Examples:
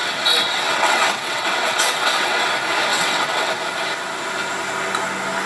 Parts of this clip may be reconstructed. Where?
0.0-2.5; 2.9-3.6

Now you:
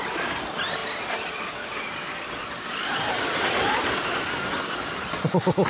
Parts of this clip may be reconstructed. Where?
none

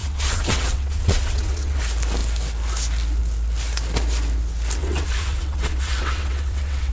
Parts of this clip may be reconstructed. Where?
0.0-1.8; 4.8-6.9

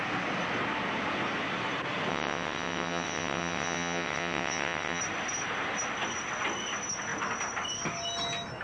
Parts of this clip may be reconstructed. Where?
2.1-5.0

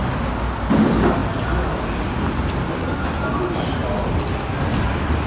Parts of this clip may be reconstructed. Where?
none

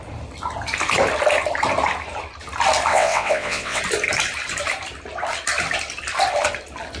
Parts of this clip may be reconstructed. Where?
2.9-3.8